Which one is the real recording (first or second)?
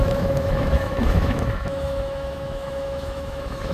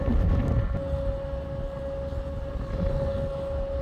second